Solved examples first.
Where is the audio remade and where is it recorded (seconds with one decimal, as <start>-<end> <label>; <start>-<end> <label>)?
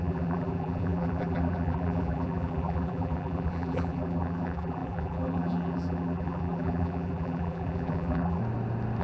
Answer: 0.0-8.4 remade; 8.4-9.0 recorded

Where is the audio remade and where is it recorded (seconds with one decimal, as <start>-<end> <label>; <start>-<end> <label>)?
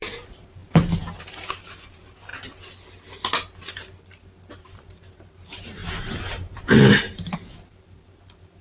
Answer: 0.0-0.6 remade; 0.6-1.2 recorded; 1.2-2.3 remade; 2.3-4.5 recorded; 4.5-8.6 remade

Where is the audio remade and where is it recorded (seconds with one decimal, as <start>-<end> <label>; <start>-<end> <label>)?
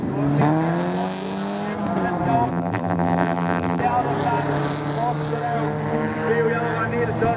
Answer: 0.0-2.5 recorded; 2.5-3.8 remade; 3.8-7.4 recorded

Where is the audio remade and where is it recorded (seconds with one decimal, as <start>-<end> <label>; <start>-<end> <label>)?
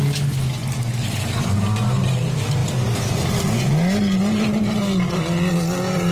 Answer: 0.0-0.6 recorded; 0.6-1.2 remade; 1.2-6.1 recorded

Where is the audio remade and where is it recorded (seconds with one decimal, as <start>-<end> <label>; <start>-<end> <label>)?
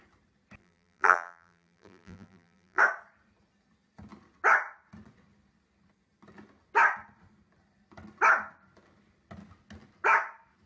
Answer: 0.0-0.6 recorded; 0.6-2.8 remade; 2.8-10.7 recorded